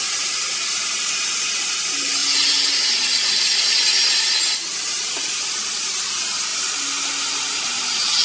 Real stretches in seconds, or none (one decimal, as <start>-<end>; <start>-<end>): 0.0-8.2